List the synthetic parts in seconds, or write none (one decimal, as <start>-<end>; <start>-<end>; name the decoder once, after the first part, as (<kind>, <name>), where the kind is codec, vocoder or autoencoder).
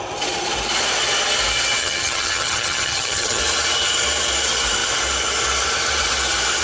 1.8-3.4 (vocoder, HiFi-GAN)